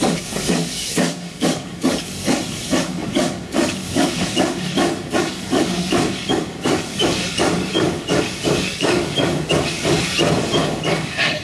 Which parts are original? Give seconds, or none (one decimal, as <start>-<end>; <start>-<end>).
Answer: none